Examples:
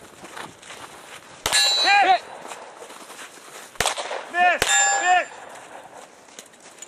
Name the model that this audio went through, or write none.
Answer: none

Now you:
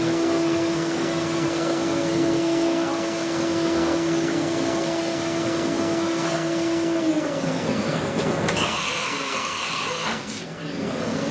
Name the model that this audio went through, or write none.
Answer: codec, SNAC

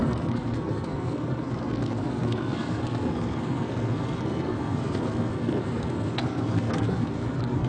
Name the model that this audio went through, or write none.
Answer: codec, SNAC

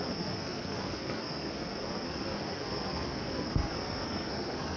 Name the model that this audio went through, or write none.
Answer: codec, SNAC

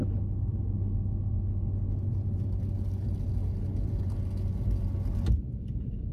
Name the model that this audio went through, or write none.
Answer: none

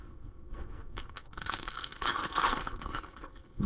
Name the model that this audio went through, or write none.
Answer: codec, SNAC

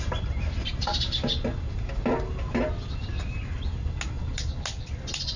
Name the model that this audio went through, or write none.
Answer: none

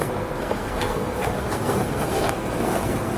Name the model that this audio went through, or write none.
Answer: codec, SNAC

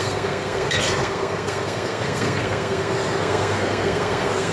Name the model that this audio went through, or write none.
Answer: codec, SNAC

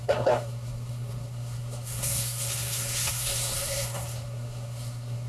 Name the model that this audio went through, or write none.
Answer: codec, SNAC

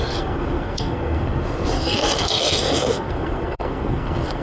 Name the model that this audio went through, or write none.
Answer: codec, SNAC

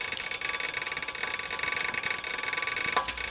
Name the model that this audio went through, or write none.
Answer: none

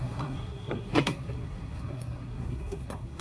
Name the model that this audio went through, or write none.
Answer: codec, SNAC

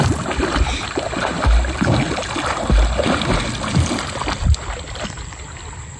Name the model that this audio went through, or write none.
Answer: none